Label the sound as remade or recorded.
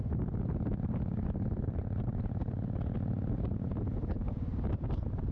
recorded